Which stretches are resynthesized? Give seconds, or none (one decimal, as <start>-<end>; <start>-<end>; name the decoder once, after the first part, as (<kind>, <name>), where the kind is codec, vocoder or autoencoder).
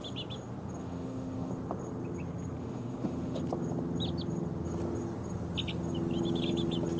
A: 0.8-1.5 (autoencoder, DAC-VAE); 2.6-3.4